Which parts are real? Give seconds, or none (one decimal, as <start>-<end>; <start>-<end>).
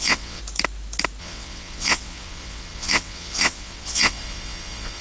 0.4-1.2